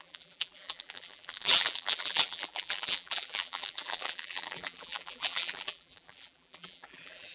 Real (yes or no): no